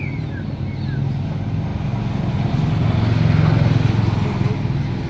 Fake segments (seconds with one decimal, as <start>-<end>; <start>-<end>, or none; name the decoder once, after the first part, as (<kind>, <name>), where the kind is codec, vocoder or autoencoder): none